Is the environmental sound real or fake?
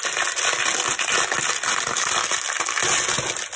real